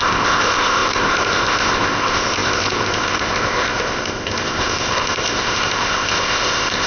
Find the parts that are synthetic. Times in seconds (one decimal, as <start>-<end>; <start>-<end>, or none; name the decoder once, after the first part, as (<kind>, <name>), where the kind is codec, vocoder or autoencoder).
0.0-6.9 (codec, ZipCodec)